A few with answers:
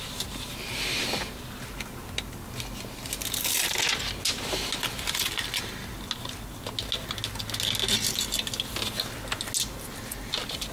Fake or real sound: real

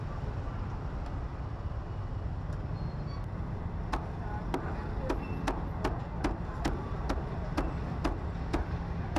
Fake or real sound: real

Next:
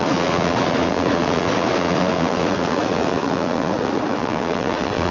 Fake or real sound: fake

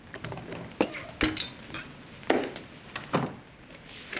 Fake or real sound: real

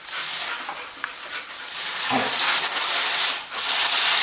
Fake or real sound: real